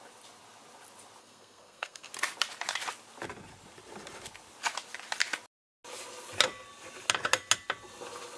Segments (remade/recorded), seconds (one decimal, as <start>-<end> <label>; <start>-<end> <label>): 0.0-1.2 recorded; 1.2-2.1 remade; 2.1-8.4 recorded